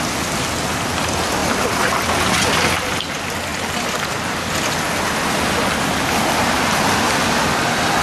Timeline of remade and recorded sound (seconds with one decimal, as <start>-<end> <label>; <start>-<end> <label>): 0.0-8.0 recorded